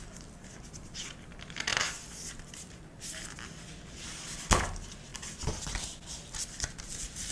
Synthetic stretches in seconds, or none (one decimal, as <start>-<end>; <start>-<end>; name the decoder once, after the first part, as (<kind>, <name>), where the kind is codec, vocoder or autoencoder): 5.1-7.3 (vocoder, BigVGAN v2)